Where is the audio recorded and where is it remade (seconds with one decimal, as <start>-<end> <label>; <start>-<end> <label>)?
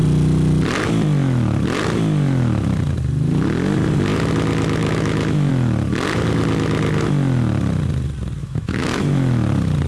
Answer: 0.0-4.8 recorded; 4.8-5.5 remade; 5.5-8.4 recorded; 8.4-9.0 remade; 9.0-9.9 recorded